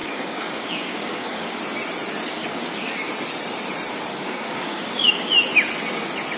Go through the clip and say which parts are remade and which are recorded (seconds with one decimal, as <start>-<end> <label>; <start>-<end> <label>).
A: 0.0-1.6 remade; 1.6-2.4 recorded; 2.4-2.9 remade; 2.9-4.1 recorded; 4.1-5.3 remade; 5.3-6.4 recorded